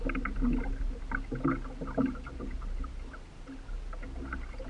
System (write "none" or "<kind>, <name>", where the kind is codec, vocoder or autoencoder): none